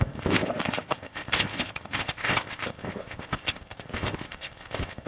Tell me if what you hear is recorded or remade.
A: remade